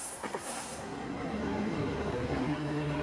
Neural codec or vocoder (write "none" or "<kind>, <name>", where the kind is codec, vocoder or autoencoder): codec, SNAC